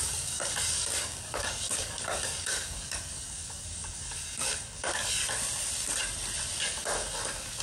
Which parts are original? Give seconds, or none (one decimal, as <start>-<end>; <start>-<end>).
5.2-6.6